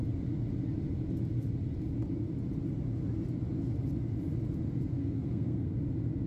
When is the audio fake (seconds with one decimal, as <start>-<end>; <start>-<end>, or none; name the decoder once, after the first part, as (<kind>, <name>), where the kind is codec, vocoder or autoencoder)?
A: 5.0-5.7 (codec, SNAC)